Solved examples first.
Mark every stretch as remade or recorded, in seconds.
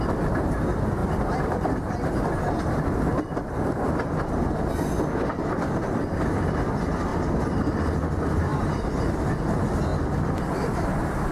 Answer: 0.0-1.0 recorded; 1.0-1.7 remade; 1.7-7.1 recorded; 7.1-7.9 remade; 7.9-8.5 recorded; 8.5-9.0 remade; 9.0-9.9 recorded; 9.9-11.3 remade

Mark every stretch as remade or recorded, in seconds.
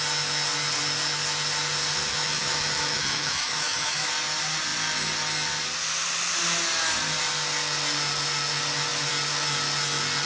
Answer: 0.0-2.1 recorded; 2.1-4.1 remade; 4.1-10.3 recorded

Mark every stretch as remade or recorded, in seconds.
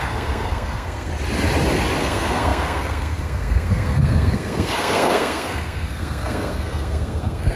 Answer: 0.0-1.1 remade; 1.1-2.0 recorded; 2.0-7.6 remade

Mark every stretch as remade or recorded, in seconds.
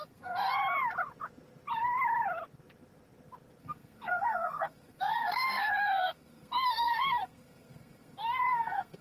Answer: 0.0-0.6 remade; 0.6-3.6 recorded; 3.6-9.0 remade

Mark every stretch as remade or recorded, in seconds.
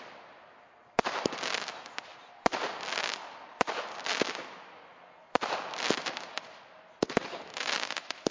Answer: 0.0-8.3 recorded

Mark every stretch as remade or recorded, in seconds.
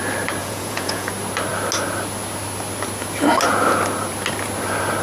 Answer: 0.0-0.4 recorded; 0.4-1.1 remade; 1.1-5.0 recorded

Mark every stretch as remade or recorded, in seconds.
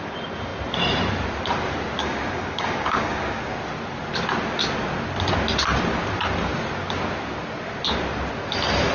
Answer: 0.0-2.0 recorded; 2.0-3.6 remade; 3.6-8.9 recorded